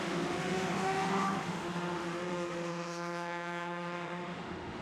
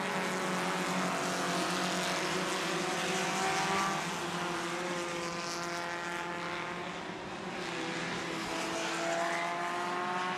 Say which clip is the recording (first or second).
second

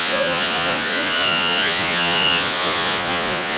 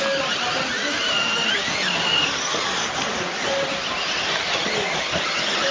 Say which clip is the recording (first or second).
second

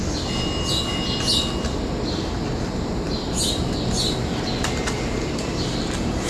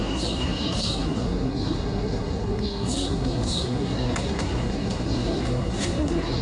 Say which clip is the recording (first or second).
first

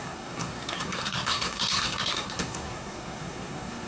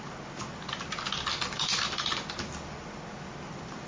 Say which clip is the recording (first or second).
second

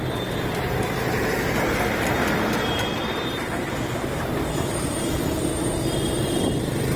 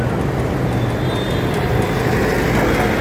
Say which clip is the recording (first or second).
second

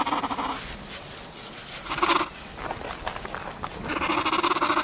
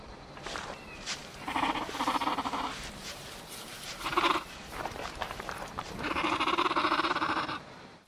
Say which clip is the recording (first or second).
first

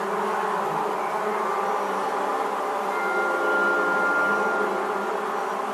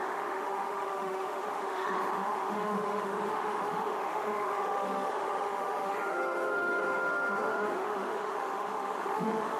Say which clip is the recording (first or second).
first